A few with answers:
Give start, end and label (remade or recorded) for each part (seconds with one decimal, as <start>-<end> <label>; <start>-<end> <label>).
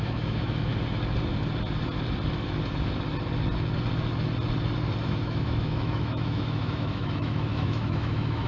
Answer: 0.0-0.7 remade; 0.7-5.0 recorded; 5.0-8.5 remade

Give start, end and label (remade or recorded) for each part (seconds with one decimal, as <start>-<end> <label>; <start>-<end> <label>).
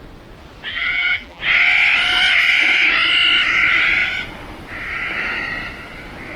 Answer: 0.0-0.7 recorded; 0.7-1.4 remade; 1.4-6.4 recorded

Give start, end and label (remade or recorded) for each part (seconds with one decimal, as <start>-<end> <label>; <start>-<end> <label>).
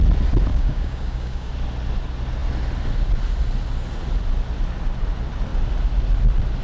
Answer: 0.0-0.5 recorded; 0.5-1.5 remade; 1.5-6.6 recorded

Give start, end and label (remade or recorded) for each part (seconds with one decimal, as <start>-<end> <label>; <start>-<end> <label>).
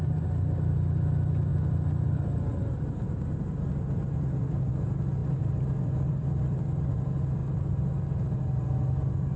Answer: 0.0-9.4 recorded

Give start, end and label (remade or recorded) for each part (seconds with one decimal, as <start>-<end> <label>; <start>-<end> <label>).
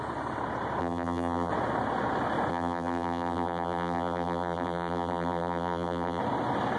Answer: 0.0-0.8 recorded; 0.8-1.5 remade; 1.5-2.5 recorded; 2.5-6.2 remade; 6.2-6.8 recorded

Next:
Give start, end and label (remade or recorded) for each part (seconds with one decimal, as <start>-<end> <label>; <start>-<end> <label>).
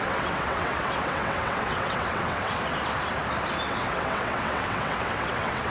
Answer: 0.0-2.6 remade; 2.6-3.7 recorded; 3.7-5.7 remade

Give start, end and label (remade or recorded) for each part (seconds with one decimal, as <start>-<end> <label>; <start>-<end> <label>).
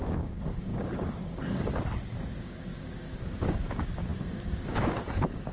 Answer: 0.0-1.7 remade; 1.7-2.4 recorded; 2.4-5.5 remade